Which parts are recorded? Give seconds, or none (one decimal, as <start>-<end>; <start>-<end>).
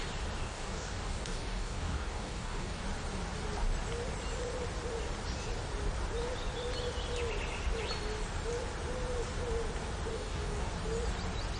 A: 0.0-0.4; 2.8-10.1; 10.7-11.6